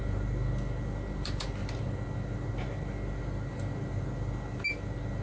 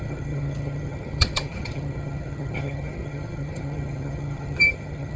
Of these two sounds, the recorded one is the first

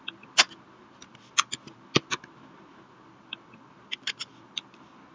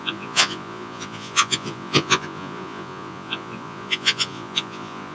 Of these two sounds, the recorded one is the first